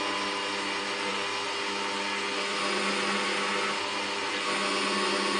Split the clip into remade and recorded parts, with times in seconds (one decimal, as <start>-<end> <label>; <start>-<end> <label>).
0.0-5.4 recorded

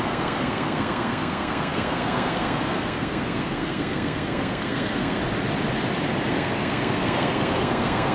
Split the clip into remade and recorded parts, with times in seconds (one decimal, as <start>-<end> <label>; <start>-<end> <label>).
0.0-5.2 remade; 5.2-6.3 recorded; 6.3-8.1 remade